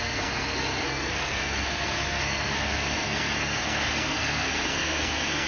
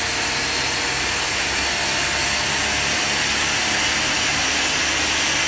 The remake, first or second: first